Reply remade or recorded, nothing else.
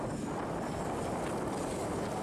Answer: recorded